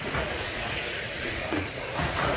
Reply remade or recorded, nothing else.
remade